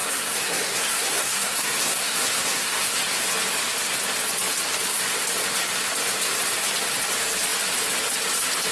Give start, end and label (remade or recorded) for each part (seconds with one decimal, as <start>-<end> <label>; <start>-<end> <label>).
0.0-3.0 remade; 3.0-8.7 recorded